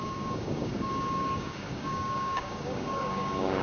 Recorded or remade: remade